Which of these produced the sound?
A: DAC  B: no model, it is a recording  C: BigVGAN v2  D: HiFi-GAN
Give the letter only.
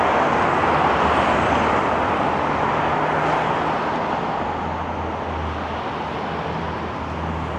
B